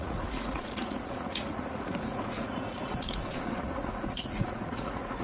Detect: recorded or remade remade